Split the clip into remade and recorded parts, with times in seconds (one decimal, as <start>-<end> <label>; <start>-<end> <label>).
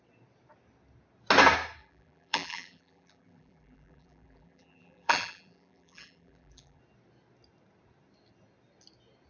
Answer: 0.0-1.8 recorded; 1.8-6.8 remade; 6.8-9.3 recorded